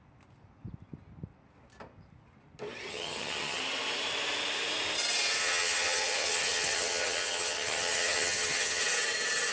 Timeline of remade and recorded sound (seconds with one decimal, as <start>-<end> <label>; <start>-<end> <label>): 0.0-2.9 recorded; 2.9-3.6 remade; 3.6-5.4 recorded; 5.4-8.8 remade; 8.8-9.5 recorded